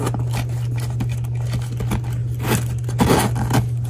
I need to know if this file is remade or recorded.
recorded